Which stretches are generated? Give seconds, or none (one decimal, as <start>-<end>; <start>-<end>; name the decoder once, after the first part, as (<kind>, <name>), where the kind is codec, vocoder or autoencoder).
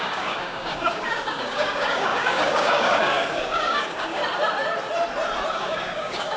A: 0.0-4.2 (codec, DAC); 5.5-6.4